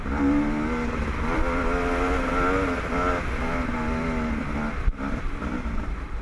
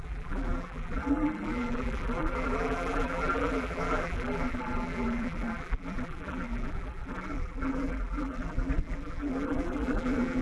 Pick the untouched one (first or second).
first